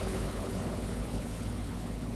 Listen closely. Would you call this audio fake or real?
fake